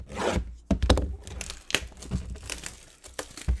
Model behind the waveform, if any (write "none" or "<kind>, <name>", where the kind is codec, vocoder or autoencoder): none